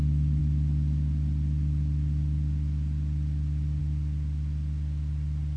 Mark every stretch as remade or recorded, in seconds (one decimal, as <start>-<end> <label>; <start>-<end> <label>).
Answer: 0.0-5.6 recorded